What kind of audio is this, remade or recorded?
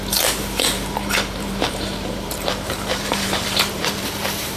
remade